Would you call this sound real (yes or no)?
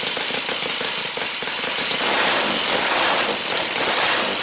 yes